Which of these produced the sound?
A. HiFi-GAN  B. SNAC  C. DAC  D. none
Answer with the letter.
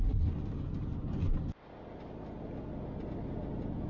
D